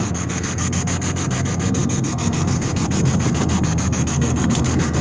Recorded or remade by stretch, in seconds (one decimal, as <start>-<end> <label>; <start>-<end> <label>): 0.0-5.0 remade